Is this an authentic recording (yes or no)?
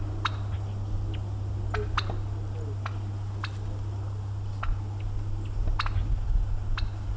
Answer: yes